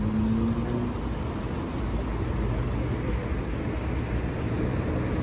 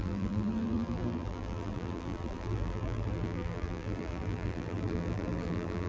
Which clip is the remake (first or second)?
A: second